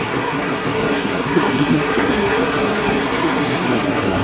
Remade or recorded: remade